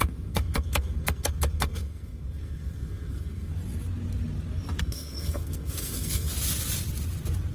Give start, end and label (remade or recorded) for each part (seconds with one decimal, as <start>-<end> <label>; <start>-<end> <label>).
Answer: 0.0-3.5 remade; 3.5-4.8 recorded; 4.8-6.3 remade; 6.3-7.5 recorded